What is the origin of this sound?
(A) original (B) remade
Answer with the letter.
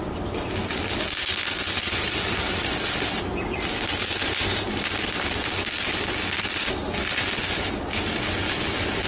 A